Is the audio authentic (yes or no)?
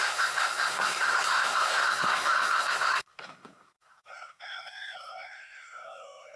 no